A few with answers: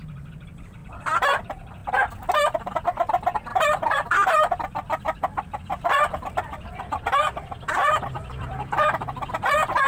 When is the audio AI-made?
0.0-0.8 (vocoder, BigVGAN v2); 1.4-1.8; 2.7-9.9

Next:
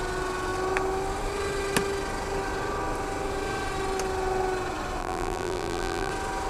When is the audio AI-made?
5.0-6.1 (vocoder, BigVGAN v2)